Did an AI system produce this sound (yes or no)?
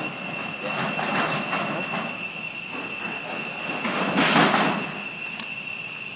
no